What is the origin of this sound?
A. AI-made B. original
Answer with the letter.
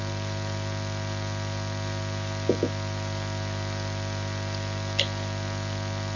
B